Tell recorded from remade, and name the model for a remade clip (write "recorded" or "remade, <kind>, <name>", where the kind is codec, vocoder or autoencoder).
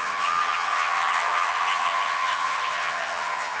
remade, vocoder, HiFi-GAN